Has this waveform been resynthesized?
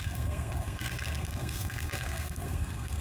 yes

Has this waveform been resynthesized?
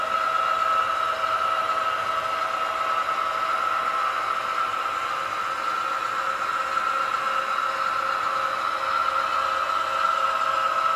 no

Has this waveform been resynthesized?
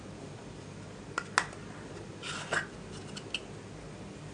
no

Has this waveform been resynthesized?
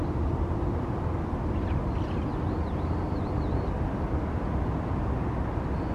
no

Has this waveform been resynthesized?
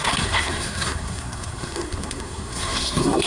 yes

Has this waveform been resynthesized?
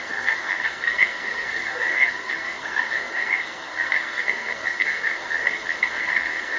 yes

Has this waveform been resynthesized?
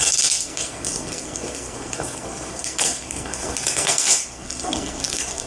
yes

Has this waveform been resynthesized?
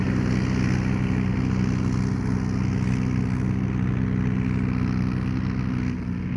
no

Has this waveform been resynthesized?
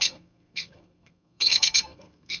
yes